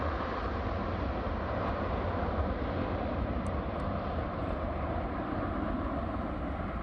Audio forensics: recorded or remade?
recorded